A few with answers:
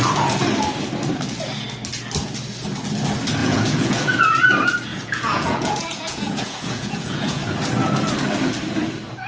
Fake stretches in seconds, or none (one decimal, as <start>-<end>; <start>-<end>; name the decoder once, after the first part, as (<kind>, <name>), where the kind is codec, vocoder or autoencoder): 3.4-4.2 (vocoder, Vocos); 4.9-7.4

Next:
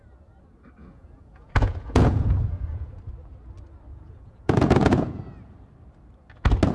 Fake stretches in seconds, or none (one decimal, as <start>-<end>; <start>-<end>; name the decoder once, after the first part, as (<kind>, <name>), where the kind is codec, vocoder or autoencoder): 0.8-3.0 (vocoder, Vocos); 3.9-5.2

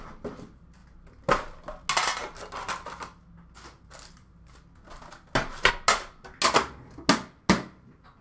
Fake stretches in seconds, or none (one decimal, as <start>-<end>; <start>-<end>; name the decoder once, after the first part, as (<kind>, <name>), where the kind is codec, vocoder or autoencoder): none

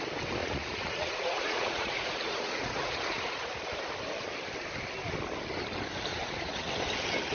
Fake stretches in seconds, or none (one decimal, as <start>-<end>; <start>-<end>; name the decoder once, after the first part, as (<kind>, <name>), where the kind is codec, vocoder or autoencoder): 0.4-3.5 (vocoder, Vocos); 6.1-6.7